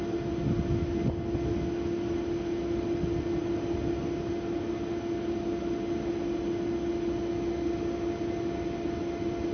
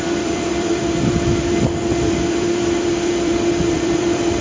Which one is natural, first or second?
first